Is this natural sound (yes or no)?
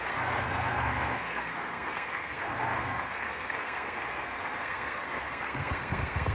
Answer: no